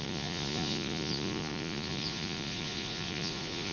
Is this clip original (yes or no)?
no